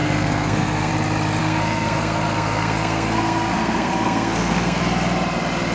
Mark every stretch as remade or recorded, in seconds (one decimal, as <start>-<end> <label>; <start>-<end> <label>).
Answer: 0.0-0.9 remade; 0.9-1.4 recorded; 1.4-4.8 remade; 4.8-5.7 recorded